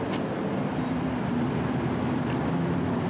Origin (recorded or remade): recorded